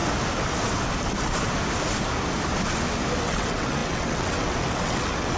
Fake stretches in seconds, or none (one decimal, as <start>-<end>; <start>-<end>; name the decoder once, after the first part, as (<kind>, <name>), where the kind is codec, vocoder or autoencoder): 3.2-5.4 (vocoder, WaveNeXt)